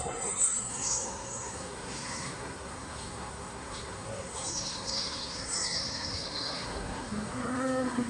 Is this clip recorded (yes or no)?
no